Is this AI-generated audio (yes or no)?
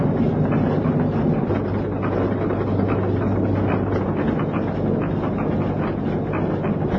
no